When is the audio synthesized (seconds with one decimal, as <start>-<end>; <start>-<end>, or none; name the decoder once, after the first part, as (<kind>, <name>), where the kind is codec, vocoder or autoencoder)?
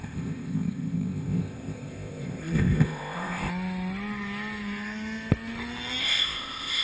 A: 0.0-3.5 (codec, ZipCodec); 6.0-6.8